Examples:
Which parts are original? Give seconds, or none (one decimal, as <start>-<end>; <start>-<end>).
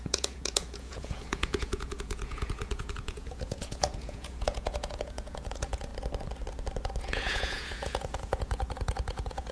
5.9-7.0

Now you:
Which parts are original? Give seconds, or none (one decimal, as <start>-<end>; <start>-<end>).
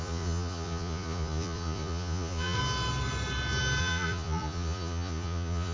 2.6-3.8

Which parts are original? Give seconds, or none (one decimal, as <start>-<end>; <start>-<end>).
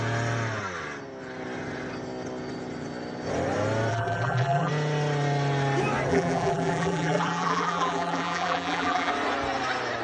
0.0-3.9; 4.7-6.1; 9.1-10.0